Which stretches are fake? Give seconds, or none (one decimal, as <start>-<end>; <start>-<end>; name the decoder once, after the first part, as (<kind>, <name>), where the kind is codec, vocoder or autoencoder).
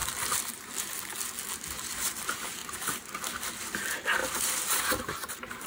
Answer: 0.0-0.6 (vocoder, BigVGAN v2); 4.2-5.3